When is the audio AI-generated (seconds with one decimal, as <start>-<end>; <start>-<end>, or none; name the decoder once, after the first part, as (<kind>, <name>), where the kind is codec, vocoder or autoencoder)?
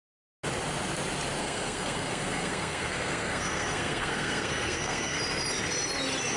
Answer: 1.4-5.2 (codec, SNAC)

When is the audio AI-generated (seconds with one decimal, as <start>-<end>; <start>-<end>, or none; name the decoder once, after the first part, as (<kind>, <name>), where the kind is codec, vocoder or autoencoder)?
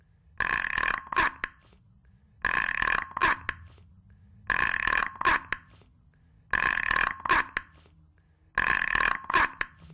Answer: none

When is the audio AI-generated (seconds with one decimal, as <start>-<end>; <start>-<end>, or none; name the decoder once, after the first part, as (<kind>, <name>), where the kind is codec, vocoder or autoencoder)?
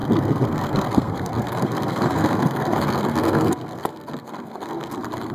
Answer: 0.0-5.3 (codec, SNAC)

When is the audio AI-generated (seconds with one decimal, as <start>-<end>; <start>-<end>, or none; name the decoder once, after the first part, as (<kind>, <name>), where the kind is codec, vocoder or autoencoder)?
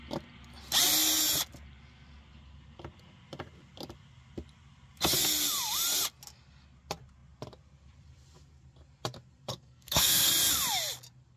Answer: 9.5-10.3 (codec, SNAC)